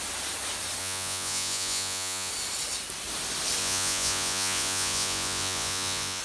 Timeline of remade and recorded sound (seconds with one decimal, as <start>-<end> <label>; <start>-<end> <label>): 0.0-0.8 recorded; 0.8-2.3 remade; 2.3-3.6 recorded; 3.6-6.2 remade